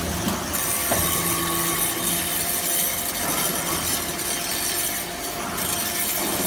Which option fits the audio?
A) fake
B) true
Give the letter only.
B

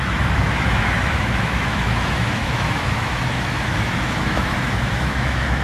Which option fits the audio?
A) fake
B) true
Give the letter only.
A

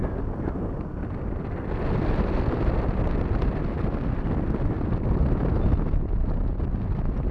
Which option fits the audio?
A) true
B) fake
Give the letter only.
A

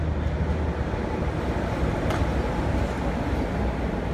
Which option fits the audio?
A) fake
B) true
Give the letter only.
B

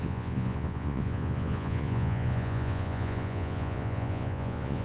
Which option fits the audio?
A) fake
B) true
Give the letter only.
A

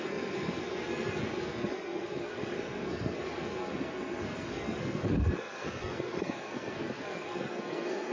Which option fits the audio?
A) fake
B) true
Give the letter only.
A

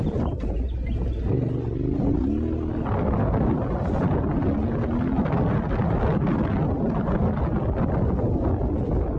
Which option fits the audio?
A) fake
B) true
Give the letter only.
B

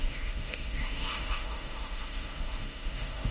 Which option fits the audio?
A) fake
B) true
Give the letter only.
A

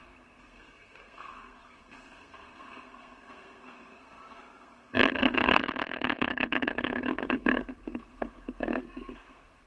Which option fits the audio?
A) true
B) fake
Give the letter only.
B